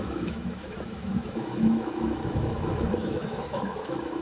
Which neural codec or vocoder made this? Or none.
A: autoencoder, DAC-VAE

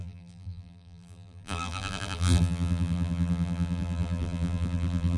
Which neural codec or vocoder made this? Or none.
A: vocoder, BigVGAN v2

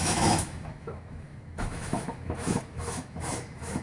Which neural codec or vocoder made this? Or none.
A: autoencoder, DAC-VAE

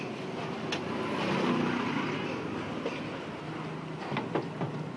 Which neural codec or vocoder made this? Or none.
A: none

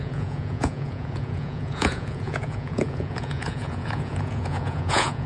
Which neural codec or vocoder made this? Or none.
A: vocoder, Vocos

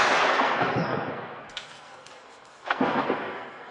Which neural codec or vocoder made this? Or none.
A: codec, SNAC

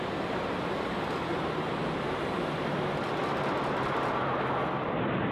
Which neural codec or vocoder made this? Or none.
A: none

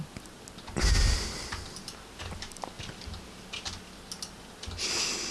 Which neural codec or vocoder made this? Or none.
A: none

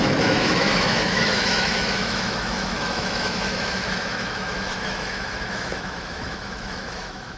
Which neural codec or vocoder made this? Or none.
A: autoencoder, DAC-VAE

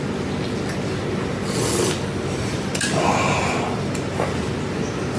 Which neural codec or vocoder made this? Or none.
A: none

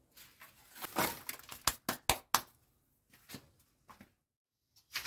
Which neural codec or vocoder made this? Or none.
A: none